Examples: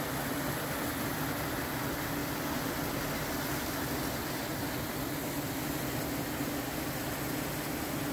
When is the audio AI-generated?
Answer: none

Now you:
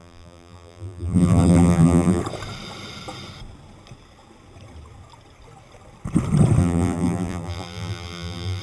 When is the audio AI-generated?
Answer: 0.0-2.2 (vocoder, BigVGAN v2); 6.6-8.6

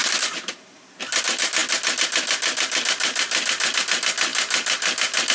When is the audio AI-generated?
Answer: none

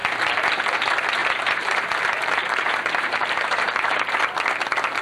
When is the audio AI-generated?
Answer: 1.2-4.2 (vocoder, BigVGAN v2)

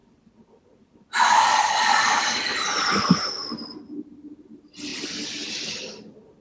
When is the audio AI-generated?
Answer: 0.0-3.8 (vocoder, BigVGAN v2)

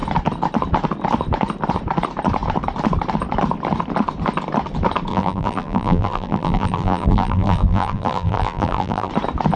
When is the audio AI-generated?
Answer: 5.1-9.1 (vocoder, BigVGAN v2)

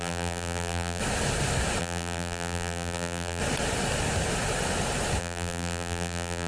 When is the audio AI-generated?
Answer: 0.0-1.0 (vocoder, BigVGAN v2); 1.8-3.4; 5.2-6.5

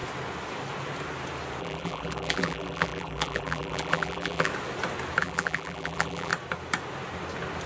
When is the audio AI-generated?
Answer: 1.6-4.5 (vocoder, BigVGAN v2); 5.2-6.3